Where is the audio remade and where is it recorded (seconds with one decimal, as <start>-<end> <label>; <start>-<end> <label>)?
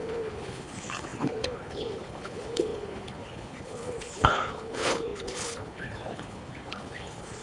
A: 0.0-7.4 remade